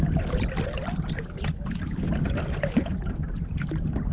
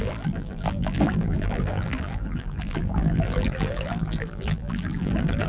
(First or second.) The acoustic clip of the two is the first